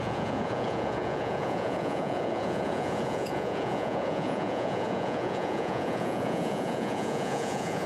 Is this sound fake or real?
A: fake